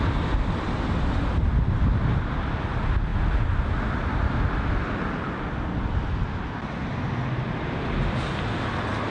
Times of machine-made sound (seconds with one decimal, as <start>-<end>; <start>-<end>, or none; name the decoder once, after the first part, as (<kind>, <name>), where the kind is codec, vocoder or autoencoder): none